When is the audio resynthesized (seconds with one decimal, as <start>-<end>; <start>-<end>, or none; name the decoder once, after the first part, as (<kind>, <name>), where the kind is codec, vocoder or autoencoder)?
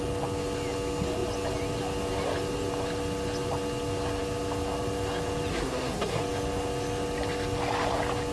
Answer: 5.5-6.2 (codec, SNAC)